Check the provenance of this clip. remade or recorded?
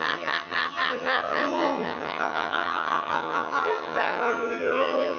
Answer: remade